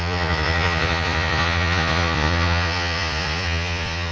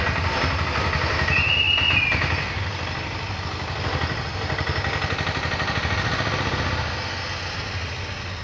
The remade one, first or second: first